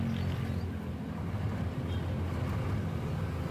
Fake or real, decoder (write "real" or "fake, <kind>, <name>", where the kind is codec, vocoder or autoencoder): real